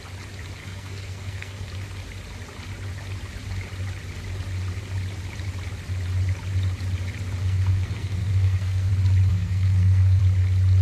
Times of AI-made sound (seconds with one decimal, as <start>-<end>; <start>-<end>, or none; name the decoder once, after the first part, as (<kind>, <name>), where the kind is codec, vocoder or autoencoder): 0.6-1.7 (codec, SNAC); 7.4-8.9; 9.3-10.2